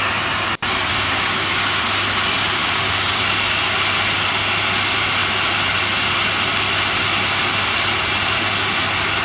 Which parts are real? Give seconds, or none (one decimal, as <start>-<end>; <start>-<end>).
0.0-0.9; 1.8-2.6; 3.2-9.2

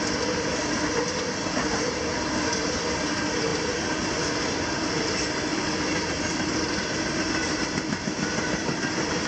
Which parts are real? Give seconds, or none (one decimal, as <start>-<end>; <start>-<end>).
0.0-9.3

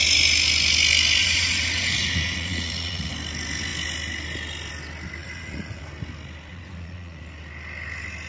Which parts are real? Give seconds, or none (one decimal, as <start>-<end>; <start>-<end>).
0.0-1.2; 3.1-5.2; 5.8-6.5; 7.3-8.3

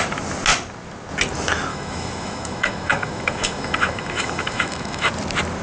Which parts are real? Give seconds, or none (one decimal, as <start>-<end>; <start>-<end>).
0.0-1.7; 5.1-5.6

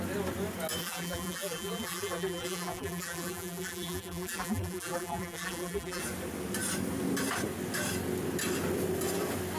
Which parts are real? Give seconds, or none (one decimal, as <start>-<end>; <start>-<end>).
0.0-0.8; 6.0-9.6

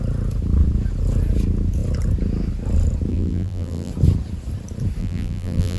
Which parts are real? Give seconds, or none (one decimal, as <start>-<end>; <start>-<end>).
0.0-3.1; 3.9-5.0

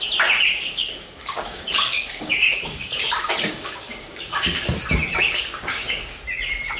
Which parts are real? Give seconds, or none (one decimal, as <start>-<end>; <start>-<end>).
0.0-0.5; 4.6-5.1; 6.2-6.8

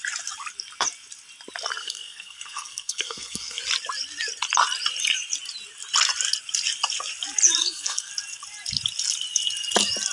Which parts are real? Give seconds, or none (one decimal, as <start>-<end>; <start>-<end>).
0.0-1.8; 3.6-7.6; 8.1-10.1